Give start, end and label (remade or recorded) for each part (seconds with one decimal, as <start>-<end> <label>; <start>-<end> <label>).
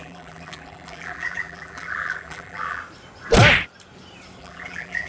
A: 0.0-2.8 remade; 2.8-4.4 recorded; 4.4-5.1 remade